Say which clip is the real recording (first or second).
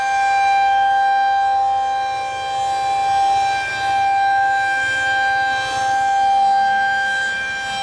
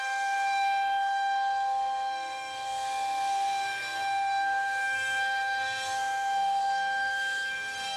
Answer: first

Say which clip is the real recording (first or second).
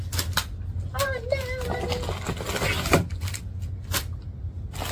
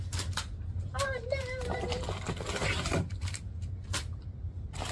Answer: first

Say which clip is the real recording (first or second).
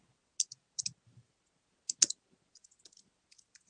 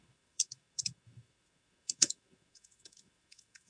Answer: first